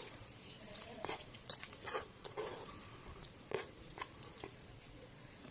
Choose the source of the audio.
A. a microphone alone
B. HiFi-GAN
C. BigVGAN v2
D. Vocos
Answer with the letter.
D